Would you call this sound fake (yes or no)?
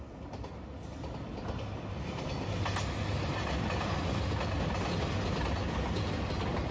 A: no